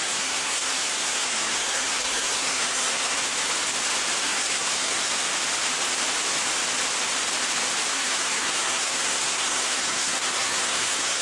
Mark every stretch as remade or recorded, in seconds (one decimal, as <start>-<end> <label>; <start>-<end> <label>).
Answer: 0.0-3.2 remade; 3.2-4.2 recorded; 4.2-5.3 remade; 5.3-7.9 recorded; 7.9-11.2 remade